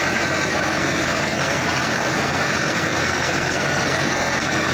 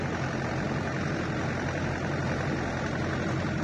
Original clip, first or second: second